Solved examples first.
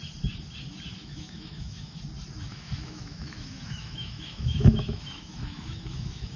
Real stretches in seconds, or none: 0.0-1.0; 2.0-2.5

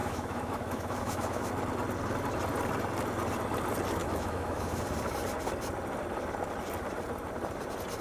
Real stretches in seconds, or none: 1.5-4.0; 4.8-8.0

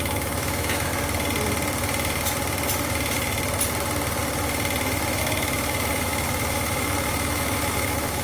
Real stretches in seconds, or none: 0.9-5.2

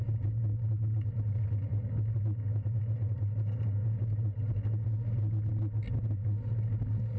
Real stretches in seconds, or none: 0.0-7.2

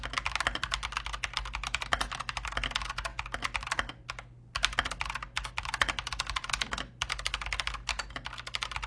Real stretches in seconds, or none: 0.0-8.9